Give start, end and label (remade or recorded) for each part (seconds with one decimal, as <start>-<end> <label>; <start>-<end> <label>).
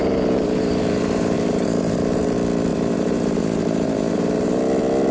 0.0-2.2 remade; 2.2-2.7 recorded; 2.7-4.6 remade; 4.6-5.1 recorded